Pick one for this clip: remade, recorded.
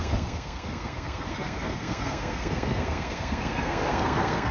remade